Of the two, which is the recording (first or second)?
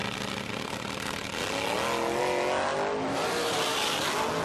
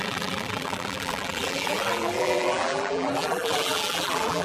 first